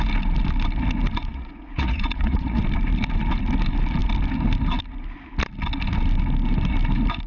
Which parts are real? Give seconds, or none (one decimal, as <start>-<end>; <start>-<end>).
0.0-1.3; 2.6-7.3